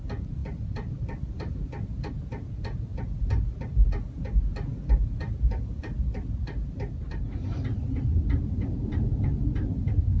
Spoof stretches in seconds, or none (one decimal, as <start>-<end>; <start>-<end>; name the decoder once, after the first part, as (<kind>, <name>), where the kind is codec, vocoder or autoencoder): 0.4-2.1 (vocoder, BigVGAN v2); 2.9-3.6